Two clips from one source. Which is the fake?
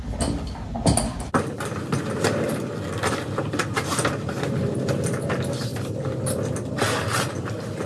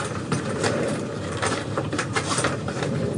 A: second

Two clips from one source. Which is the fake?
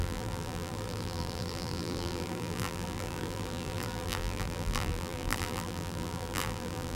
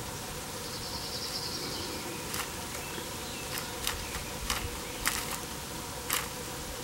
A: first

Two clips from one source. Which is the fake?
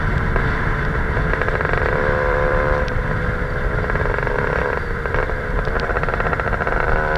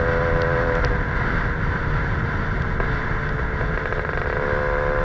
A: first